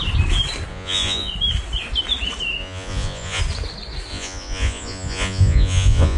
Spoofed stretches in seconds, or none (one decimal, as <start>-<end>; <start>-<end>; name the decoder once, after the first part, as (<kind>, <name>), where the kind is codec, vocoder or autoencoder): 0.7-1.3 (vocoder, Vocos); 2.6-3.4; 4.1-6.2